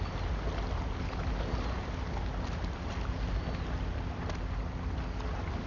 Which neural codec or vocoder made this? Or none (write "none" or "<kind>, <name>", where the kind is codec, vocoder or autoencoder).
none